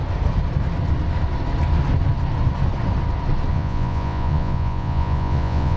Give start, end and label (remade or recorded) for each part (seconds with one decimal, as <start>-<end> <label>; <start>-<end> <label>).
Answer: 0.0-3.5 recorded; 3.5-5.8 remade